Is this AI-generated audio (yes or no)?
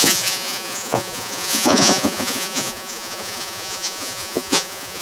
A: yes